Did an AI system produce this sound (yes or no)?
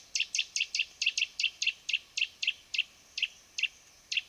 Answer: no